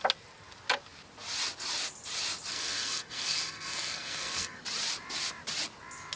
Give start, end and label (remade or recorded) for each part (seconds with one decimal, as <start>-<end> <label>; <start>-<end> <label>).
0.0-2.5 recorded; 2.5-4.6 remade; 4.6-6.2 recorded